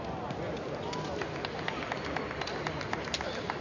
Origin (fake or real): real